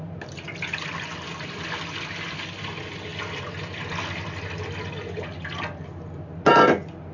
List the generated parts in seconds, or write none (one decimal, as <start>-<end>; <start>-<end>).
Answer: none